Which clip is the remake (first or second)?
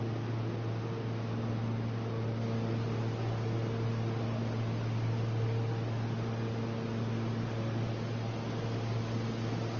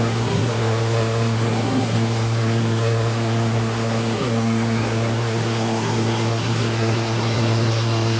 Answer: second